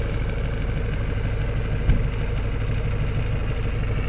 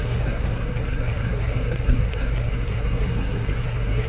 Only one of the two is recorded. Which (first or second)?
first